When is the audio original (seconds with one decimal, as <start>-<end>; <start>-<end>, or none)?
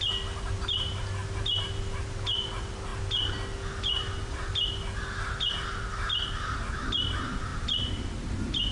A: 0.0-8.7